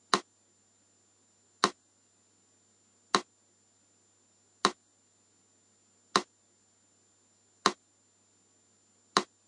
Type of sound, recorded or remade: recorded